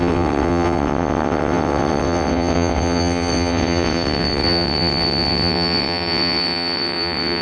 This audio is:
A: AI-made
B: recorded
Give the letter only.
A